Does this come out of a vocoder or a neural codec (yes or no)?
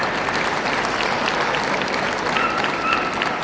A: no